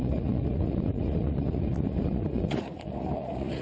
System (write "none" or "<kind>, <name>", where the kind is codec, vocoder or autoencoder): vocoder, Vocos